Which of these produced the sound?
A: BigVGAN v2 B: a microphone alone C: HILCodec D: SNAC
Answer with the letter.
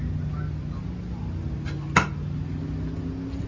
B